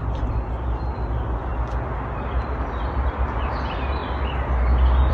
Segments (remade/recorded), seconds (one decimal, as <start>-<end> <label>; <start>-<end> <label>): 0.0-5.1 recorded

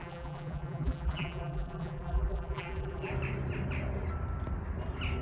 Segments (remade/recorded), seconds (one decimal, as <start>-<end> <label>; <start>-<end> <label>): 0.0-3.1 remade; 3.1-5.2 recorded

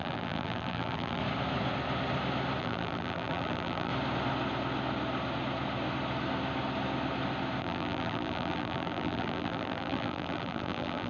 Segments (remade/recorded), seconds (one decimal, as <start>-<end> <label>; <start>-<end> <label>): 0.0-1.2 remade; 1.2-2.6 recorded; 2.6-3.9 remade; 3.9-7.6 recorded; 7.6-11.1 remade

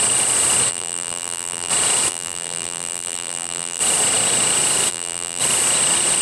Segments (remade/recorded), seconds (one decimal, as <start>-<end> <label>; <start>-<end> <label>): 0.0-0.7 recorded; 0.7-1.7 remade; 1.7-2.1 recorded; 2.1-3.8 remade; 3.8-4.9 recorded; 4.9-5.4 remade; 5.4-6.2 recorded

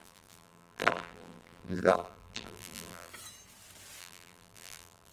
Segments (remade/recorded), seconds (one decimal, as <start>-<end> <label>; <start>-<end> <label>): 0.0-3.1 remade; 3.1-4.0 recorded; 4.0-5.1 remade

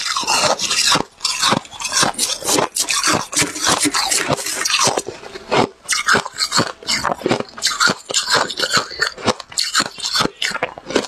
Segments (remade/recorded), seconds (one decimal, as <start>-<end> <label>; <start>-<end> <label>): 0.0-2.7 recorded; 2.7-3.4 remade; 3.4-11.1 recorded

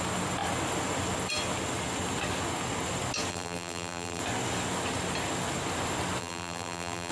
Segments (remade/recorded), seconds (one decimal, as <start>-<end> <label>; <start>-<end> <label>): 0.0-3.3 recorded; 3.3-4.2 remade; 4.2-6.2 recorded; 6.2-7.1 remade